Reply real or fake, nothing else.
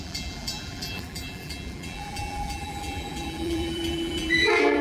fake